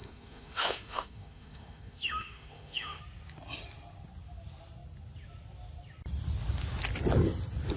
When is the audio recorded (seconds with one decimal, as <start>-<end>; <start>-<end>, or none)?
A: 3.0-7.8